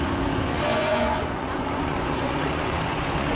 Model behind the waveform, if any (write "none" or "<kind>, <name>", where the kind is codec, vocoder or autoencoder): vocoder, Vocos